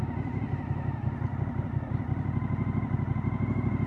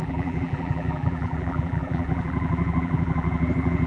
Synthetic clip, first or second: second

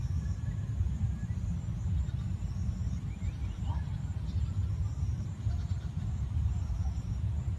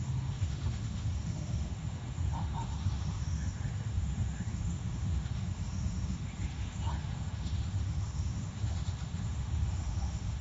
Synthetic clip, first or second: second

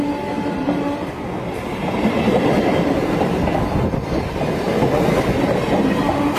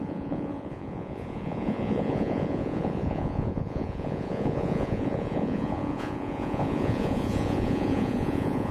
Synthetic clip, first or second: second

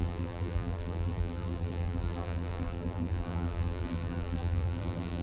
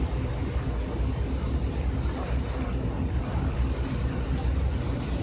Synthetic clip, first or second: first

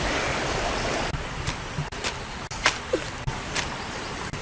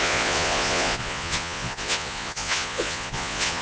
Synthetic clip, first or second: second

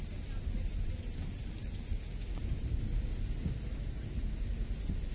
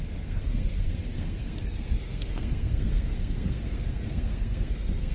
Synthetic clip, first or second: second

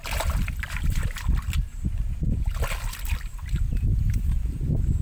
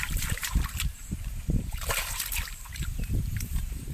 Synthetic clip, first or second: second